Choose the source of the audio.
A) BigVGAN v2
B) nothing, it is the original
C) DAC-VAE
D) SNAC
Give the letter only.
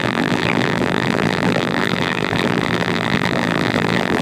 A